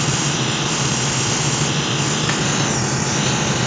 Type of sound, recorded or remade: recorded